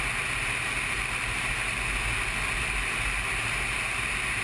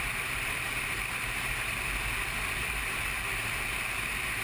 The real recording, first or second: first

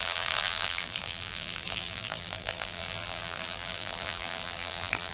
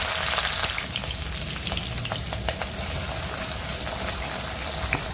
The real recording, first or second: second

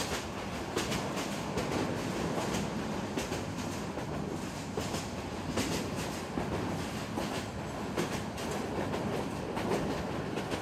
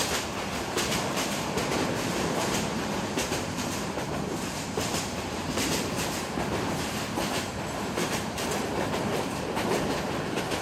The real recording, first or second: first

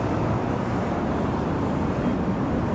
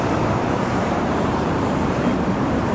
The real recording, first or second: first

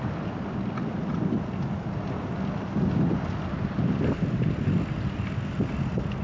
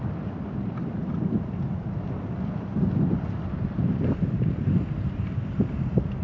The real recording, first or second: first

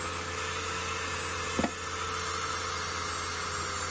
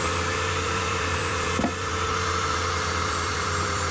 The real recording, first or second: first